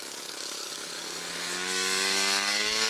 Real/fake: fake